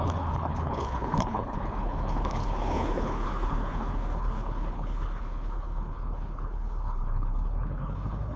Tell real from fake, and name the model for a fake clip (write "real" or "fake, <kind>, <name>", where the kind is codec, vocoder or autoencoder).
fake, codec, HILCodec